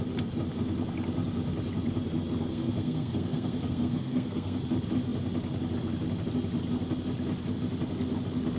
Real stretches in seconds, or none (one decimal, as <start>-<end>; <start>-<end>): 0.0-2.5; 4.6-8.6